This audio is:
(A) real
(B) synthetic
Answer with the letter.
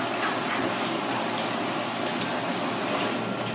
A